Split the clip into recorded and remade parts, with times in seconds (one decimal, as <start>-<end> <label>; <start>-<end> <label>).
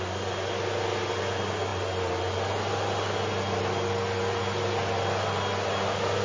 0.0-6.2 recorded